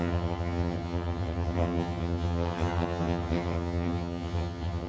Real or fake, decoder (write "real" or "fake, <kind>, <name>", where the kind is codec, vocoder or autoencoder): fake, vocoder, HiFi-GAN